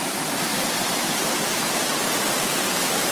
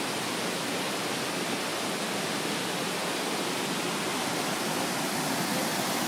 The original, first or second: second